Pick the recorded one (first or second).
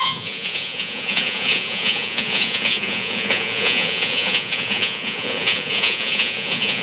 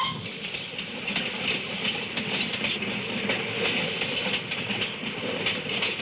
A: second